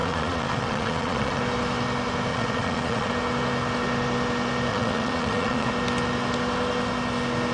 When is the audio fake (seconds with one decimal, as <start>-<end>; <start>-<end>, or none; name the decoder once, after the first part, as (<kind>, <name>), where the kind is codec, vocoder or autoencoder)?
0.0-1.4 (vocoder, Vocos); 2.3-3.1; 4.7-5.7

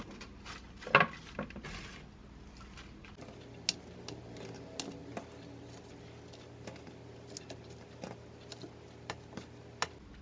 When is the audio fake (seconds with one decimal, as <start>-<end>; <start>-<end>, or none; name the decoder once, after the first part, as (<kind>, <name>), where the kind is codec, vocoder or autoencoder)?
none